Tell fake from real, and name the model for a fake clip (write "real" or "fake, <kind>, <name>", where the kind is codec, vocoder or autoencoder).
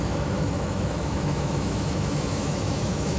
fake, autoencoder, DAC-VAE